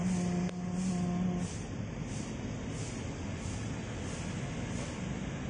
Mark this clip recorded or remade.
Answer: recorded